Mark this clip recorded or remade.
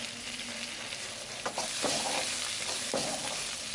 recorded